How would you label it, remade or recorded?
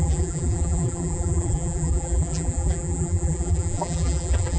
remade